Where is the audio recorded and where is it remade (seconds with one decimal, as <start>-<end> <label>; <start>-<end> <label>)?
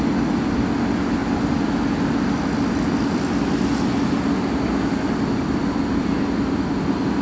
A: 0.0-7.2 recorded